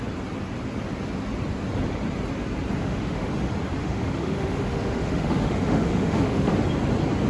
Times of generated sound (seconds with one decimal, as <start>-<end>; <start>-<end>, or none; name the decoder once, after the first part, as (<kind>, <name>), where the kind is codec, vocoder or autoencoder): 2.8-3.3 (autoencoder, DAC-VAE); 3.8-6.5